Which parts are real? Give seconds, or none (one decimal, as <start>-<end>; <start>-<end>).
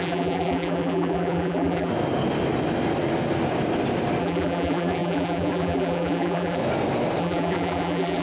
1.9-4.2; 6.6-7.2